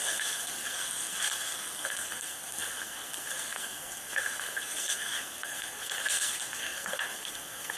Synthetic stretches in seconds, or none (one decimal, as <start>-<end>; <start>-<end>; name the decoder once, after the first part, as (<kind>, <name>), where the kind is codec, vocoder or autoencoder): 0.0-7.8 (codec, SNAC)